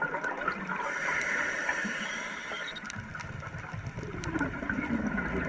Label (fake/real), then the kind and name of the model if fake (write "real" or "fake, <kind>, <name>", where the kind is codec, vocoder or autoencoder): real